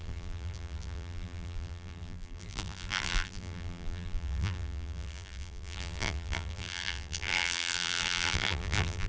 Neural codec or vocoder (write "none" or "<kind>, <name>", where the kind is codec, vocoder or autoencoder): vocoder, BigVGAN v2